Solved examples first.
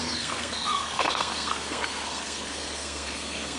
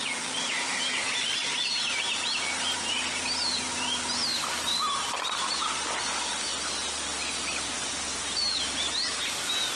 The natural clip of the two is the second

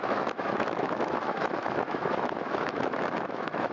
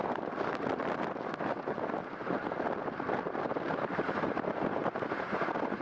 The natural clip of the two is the second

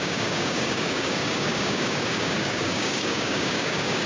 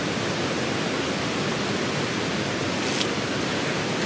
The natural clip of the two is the second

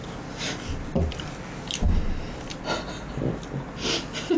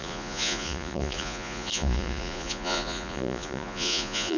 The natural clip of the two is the first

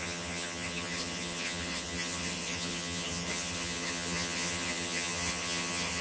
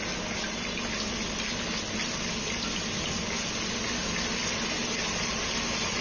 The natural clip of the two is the second